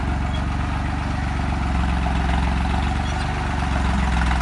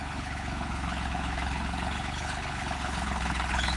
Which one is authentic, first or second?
first